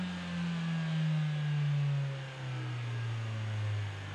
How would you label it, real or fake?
real